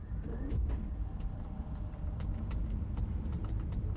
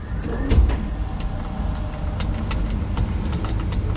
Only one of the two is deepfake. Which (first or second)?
first